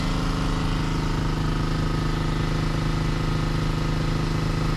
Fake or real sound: real